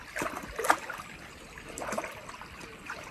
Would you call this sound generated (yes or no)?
no